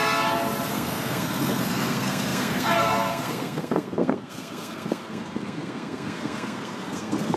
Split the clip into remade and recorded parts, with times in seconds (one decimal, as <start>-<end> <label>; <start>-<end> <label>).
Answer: 0.0-0.7 recorded; 0.7-7.4 remade

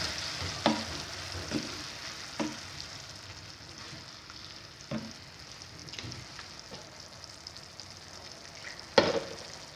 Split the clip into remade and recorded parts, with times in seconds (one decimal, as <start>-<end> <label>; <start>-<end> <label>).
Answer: 0.0-9.8 recorded

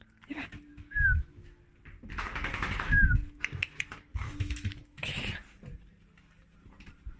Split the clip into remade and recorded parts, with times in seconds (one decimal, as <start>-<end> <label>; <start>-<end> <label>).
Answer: 0.0-0.7 recorded; 0.7-1.6 remade; 1.6-2.5 recorded; 2.5-3.4 remade; 3.4-4.1 recorded; 4.1-5.2 remade; 5.2-7.2 recorded

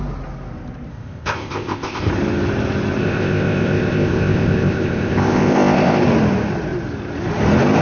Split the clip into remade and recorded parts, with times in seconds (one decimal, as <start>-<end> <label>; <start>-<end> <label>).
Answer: 0.0-0.9 recorded; 0.9-2.1 remade; 2.1-3.0 recorded; 3.0-6.0 remade; 6.0-7.8 recorded

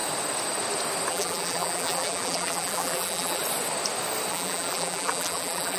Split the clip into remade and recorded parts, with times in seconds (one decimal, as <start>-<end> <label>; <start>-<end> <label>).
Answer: 0.0-1.1 recorded; 1.1-3.4 remade; 3.4-4.3 recorded; 4.3-5.8 remade

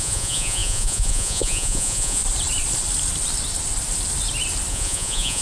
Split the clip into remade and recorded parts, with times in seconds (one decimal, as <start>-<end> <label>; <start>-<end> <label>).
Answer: 0.0-2.2 remade; 2.2-4.7 recorded; 4.7-5.4 remade